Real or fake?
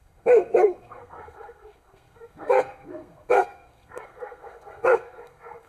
fake